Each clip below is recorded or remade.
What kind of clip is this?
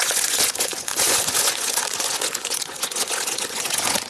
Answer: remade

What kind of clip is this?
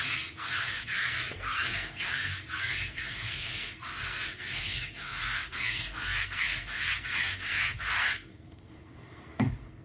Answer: remade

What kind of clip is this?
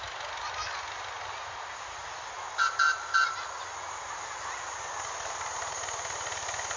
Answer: recorded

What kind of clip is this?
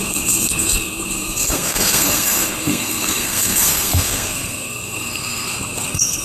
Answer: remade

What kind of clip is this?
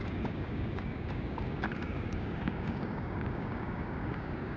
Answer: remade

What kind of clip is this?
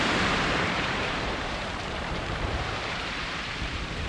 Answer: remade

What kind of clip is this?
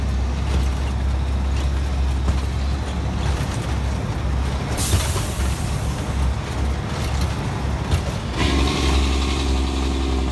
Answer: recorded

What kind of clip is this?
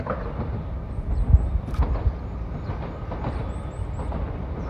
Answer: recorded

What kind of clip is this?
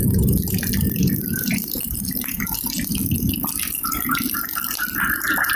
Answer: recorded